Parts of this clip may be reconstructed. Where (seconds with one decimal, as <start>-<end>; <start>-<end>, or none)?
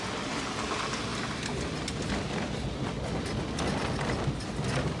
none